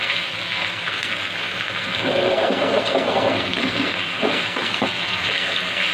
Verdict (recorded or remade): remade